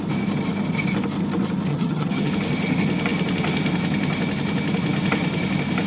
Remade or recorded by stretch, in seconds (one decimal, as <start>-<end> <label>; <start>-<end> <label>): 0.0-1.7 recorded; 1.7-2.3 remade; 2.3-5.9 recorded